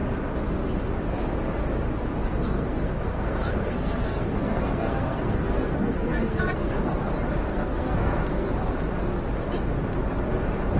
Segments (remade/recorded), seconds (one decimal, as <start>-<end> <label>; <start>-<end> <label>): 0.0-2.2 recorded; 2.2-7.1 remade; 7.1-7.5 recorded; 7.5-8.5 remade; 8.5-10.8 recorded